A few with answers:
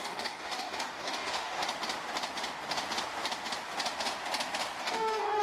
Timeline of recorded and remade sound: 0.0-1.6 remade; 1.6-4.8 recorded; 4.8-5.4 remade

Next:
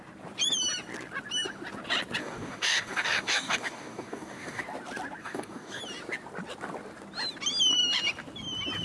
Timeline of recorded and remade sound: 0.0-2.2 recorded; 2.2-4.6 remade; 4.6-5.2 recorded; 5.2-5.8 remade; 5.8-8.8 recorded